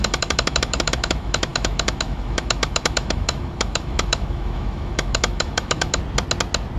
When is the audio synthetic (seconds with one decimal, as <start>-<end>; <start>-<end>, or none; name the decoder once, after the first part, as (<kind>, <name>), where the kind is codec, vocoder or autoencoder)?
0.0-6.0 (autoencoder, DAC-VAE)